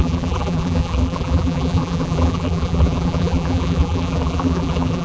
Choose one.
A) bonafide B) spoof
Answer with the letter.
B